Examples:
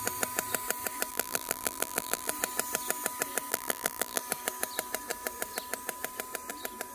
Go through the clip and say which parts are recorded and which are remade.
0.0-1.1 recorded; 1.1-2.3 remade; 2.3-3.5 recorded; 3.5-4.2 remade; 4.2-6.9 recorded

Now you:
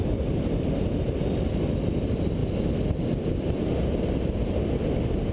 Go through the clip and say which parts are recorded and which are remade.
0.0-2.4 recorded; 2.4-3.3 remade; 3.3-5.3 recorded

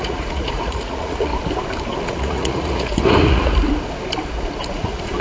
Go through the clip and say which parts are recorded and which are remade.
0.0-1.3 remade; 1.3-2.0 recorded; 2.0-3.5 remade; 3.5-4.7 recorded; 4.7-5.2 remade